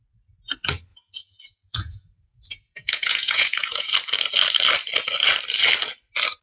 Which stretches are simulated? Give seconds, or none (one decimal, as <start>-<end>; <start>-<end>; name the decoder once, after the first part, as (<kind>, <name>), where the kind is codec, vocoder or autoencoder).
0.9-3.9 (vocoder, Vocos)